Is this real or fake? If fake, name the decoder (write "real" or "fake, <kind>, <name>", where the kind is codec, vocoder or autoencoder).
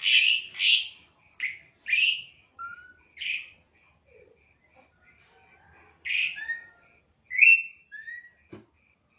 real